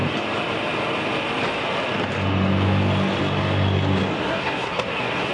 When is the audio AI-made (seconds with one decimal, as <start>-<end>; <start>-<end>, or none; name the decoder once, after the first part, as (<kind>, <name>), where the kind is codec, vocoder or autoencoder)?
4.2-5.3 (codec, SNAC)